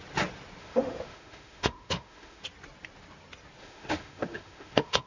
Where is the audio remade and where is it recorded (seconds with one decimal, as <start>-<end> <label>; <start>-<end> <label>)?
0.0-0.6 recorded; 0.6-2.4 remade; 2.4-3.6 recorded; 3.6-5.1 remade